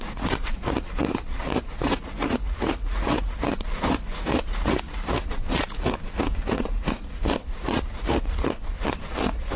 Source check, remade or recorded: remade